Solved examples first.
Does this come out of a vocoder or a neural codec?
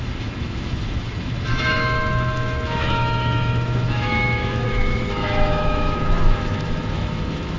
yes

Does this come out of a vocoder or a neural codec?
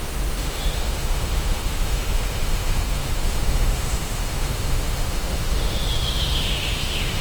yes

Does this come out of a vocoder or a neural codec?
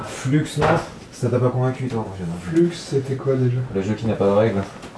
no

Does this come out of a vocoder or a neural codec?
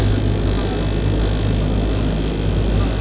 no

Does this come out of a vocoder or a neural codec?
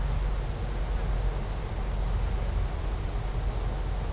no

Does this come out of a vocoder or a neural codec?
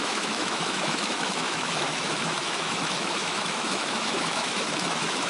yes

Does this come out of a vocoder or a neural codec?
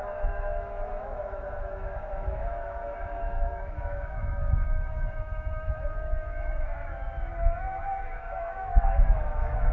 yes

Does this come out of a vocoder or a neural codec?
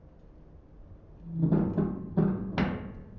no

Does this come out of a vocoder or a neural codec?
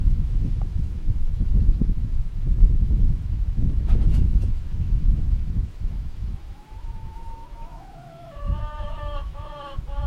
yes